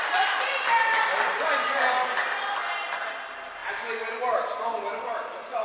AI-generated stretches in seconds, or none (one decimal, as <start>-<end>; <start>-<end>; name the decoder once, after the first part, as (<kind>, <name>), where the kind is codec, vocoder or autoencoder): none